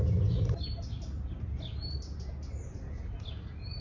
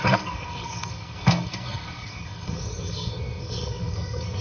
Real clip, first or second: first